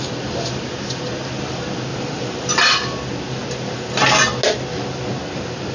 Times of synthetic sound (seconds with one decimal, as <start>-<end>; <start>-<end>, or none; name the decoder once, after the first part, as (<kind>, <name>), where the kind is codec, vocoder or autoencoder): 1.9-2.4 (vocoder, BigVGAN v2)